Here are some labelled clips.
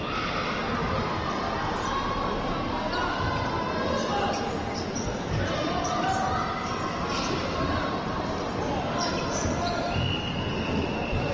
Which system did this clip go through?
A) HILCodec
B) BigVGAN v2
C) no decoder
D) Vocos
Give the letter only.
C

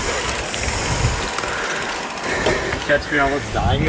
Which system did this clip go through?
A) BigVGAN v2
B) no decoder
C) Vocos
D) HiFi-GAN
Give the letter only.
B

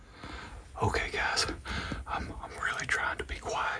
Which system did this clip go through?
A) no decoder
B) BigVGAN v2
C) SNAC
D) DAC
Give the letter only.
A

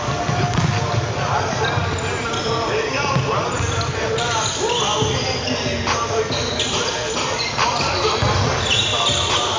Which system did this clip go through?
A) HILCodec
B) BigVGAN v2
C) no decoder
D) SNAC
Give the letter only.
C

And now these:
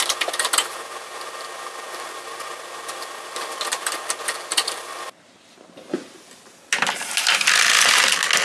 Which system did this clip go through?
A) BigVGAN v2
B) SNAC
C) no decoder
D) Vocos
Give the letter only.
C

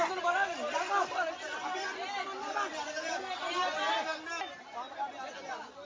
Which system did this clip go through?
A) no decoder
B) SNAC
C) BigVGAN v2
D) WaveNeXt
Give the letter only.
A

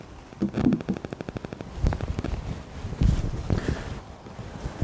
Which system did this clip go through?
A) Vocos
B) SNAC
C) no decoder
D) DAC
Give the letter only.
C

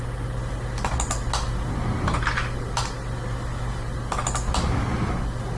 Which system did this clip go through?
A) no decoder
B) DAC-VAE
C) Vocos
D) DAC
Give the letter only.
A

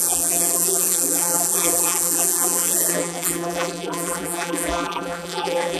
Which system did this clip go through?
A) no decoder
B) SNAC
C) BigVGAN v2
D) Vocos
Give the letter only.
C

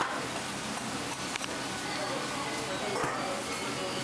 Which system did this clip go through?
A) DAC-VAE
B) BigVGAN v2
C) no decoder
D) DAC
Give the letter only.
C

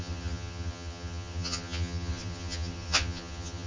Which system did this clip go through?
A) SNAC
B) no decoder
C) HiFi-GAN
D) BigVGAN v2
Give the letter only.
C